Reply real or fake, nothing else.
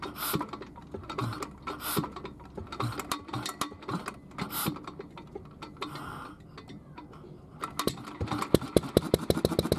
real